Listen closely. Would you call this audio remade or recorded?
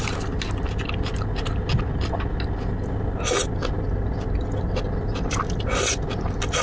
recorded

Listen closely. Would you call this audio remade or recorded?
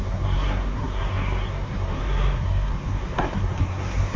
remade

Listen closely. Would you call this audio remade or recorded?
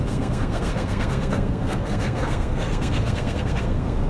remade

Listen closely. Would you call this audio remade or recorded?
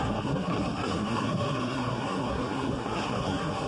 remade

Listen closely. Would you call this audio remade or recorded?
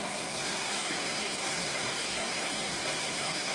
remade